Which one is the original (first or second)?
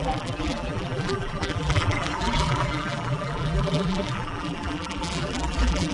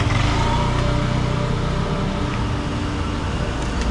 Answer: second